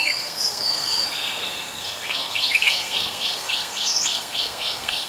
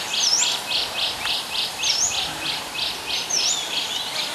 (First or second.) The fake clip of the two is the first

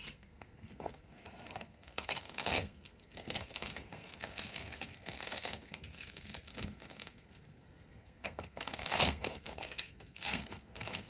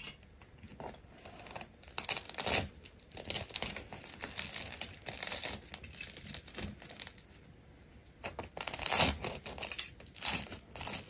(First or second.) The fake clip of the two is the first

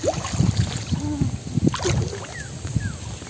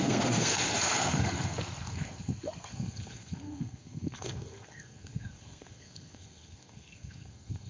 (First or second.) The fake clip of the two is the second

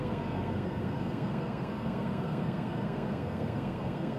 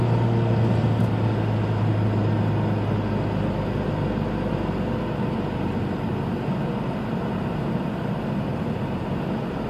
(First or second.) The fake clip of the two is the first